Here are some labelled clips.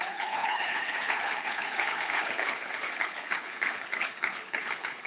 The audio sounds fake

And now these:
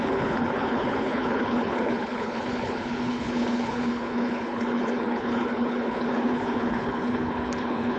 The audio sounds fake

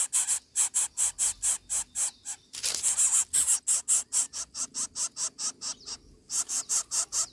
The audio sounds real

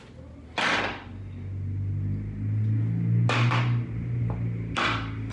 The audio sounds real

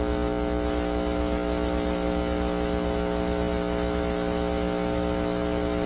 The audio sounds real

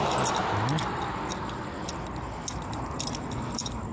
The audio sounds real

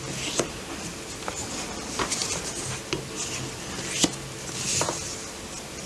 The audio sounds real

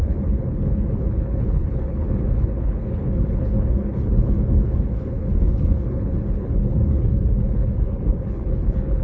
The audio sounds fake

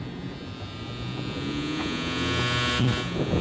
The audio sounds real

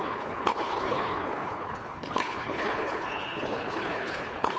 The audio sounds fake